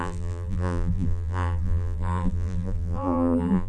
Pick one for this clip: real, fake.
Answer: fake